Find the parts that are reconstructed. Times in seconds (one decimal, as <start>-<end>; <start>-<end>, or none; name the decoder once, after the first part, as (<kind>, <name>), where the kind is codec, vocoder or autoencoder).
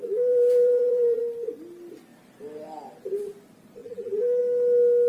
0.0-1.2 (vocoder, BigVGAN v2); 3.8-4.4